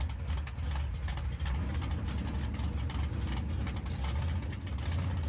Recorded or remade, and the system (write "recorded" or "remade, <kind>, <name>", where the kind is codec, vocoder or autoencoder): recorded